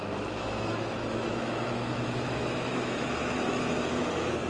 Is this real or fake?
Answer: fake